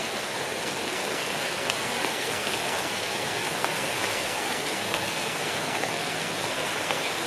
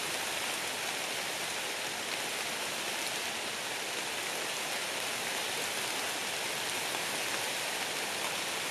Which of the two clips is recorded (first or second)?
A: second